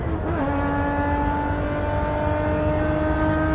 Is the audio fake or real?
real